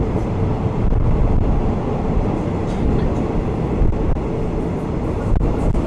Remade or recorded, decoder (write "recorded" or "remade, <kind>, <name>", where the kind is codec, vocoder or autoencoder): recorded